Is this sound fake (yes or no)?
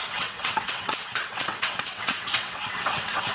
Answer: yes